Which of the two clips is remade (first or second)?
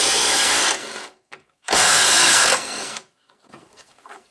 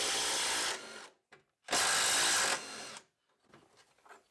first